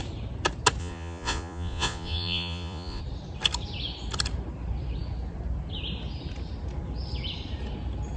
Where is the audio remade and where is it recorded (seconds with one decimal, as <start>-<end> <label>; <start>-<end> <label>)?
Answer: 0.0-0.8 recorded; 0.8-3.0 remade; 3.0-8.2 recorded

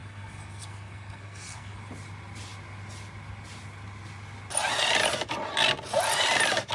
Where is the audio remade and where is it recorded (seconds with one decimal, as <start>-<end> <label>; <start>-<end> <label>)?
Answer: 0.0-1.8 remade; 1.8-6.7 recorded

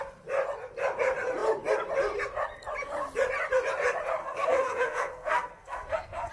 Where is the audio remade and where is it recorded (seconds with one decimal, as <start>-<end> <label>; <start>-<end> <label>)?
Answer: 0.0-4.2 recorded; 4.2-6.3 remade

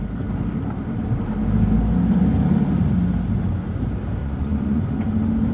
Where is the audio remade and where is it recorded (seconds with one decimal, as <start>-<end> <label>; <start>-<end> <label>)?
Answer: 0.0-4.2 recorded; 4.2-4.8 remade; 4.8-5.5 recorded

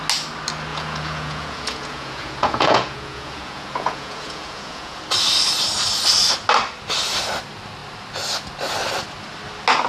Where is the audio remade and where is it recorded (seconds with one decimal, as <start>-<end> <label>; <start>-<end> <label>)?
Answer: 0.0-0.7 recorded; 0.7-5.0 remade; 5.0-9.9 recorded

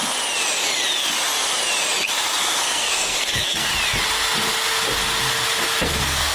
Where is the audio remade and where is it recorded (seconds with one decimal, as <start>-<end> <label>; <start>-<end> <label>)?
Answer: 0.0-2.4 recorded; 2.4-3.7 remade; 3.7-5.8 recorded; 5.8-6.3 remade